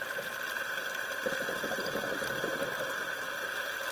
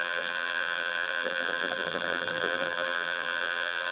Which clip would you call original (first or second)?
first